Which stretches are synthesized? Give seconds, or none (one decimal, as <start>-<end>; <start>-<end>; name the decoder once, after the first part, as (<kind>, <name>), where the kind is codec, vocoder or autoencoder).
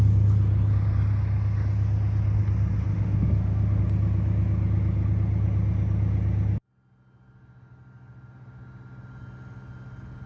2.9-3.8 (autoencoder, DAC-VAE)